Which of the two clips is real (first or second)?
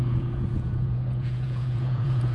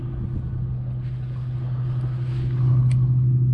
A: second